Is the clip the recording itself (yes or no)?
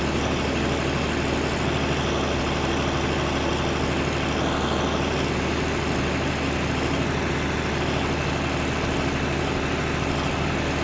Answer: yes